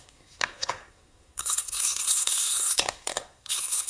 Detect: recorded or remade remade